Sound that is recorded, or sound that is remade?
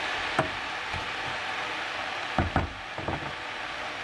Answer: recorded